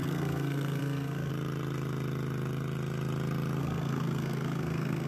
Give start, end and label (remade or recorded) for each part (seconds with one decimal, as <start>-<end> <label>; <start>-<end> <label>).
0.0-1.3 remade; 1.3-3.6 recorded; 3.6-5.1 remade